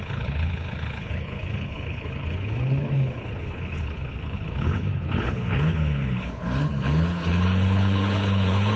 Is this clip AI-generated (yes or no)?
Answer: yes